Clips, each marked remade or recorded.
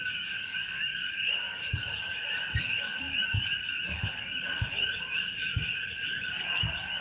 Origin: remade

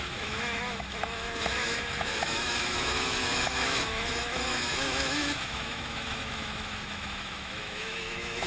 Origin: remade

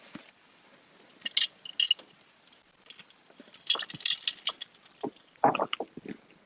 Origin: recorded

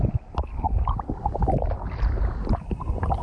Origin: recorded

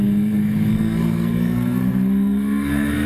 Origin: remade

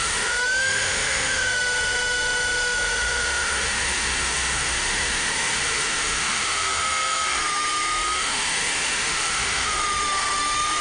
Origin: remade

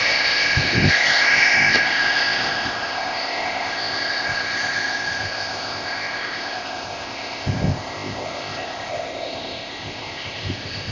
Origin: remade